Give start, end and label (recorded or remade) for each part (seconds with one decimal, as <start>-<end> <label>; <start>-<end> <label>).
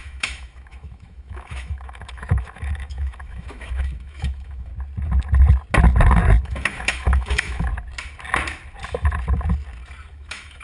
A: 0.0-4.7 remade; 4.7-6.4 recorded; 6.4-7.7 remade; 7.7-10.1 recorded; 10.1-10.6 remade